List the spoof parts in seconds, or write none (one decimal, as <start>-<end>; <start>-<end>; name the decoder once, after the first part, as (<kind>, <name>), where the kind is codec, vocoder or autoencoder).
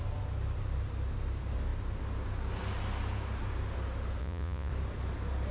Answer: 4.2-4.7 (vocoder, Vocos)